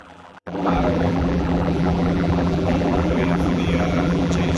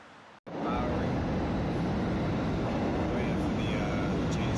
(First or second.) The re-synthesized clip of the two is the first